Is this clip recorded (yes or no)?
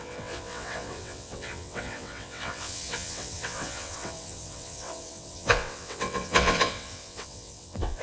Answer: no